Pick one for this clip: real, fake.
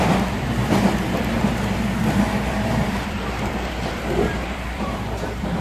fake